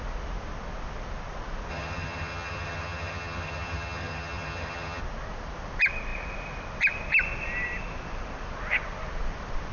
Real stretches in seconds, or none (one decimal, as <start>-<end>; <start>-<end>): 0.0-1.7; 5.0-9.7